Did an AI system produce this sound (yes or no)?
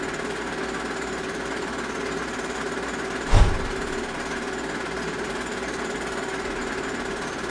no